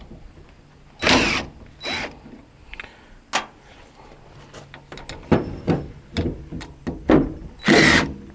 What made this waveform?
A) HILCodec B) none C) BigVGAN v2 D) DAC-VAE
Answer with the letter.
B